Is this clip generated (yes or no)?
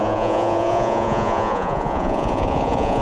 yes